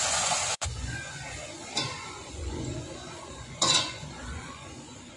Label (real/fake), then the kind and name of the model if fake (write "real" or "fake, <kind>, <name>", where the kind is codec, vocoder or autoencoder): fake, vocoder, Vocos